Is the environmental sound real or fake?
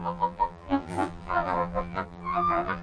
fake